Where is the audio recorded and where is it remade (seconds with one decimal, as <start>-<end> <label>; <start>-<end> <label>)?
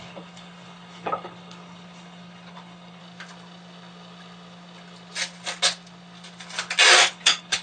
0.0-3.0 remade; 3.0-7.1 recorded; 7.1-7.6 remade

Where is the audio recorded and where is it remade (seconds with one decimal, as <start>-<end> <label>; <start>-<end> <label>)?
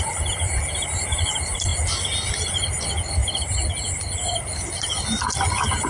0.0-1.7 remade; 1.7-2.3 recorded; 2.3-5.9 remade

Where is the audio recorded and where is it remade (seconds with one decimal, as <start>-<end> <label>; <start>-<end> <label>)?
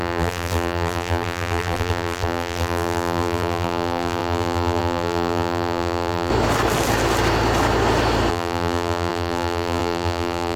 0.0-6.3 remade; 6.3-8.3 recorded; 8.3-10.6 remade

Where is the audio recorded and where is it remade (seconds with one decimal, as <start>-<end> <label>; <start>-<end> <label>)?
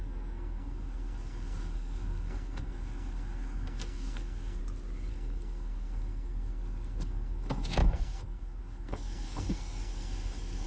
0.0-4.6 remade; 4.6-5.1 recorded; 5.1-10.7 remade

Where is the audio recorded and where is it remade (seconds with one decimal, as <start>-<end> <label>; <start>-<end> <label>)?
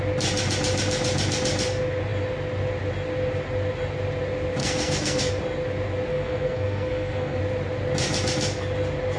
0.0-4.6 recorded; 4.6-5.3 remade; 5.3-6.1 recorded; 6.1-7.4 remade; 7.4-9.2 recorded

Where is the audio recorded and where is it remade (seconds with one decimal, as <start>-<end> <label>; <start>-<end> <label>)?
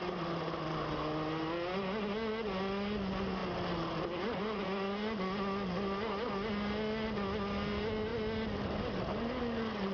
0.0-9.9 recorded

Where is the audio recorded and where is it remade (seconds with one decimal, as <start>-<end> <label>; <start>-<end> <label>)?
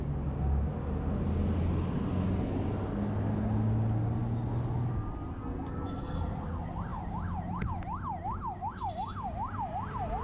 0.0-10.2 recorded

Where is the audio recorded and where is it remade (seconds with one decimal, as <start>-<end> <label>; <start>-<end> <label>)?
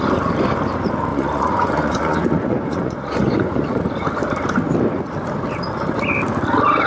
0.0-1.1 recorded; 1.1-3.8 remade; 3.8-6.9 recorded